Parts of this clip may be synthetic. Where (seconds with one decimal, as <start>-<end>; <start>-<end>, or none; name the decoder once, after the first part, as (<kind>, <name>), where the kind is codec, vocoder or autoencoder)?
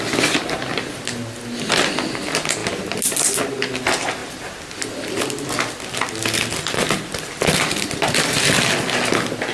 none